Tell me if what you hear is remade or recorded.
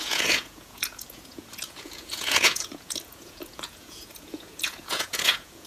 remade